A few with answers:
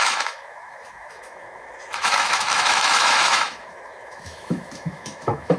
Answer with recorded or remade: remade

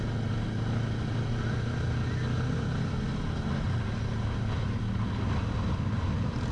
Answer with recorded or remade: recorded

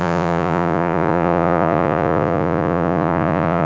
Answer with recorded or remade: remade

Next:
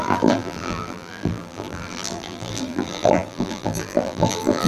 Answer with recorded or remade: remade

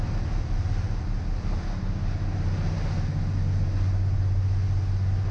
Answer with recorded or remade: recorded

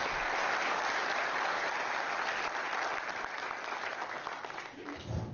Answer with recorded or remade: recorded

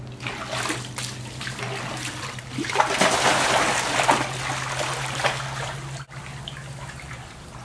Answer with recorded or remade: recorded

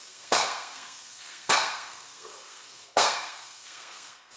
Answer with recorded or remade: remade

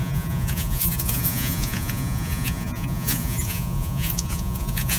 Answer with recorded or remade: remade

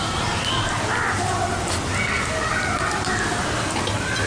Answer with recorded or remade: recorded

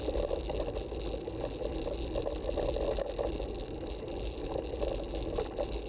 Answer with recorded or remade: recorded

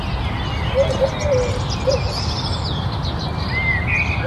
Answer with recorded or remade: recorded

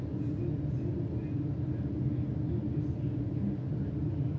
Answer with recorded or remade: recorded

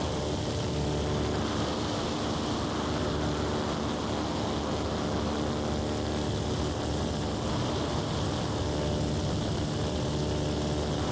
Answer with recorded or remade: recorded